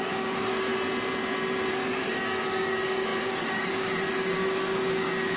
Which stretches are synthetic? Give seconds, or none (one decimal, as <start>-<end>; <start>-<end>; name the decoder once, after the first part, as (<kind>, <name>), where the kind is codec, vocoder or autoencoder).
0.0-0.7 (codec, DAC); 1.7-5.4